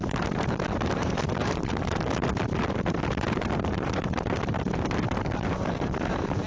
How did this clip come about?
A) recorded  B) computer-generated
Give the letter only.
B